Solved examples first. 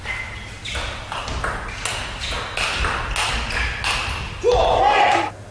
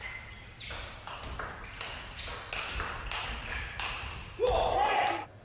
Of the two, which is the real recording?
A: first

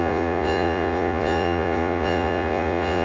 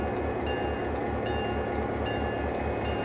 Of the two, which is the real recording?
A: second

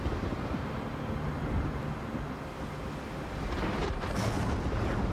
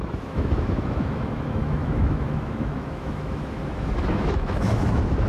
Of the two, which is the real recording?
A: first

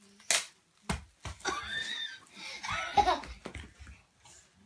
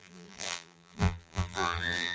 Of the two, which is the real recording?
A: first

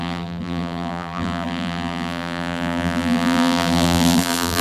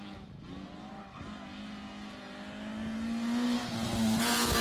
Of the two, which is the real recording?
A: second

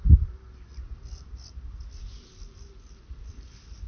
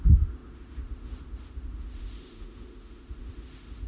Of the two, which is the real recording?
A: first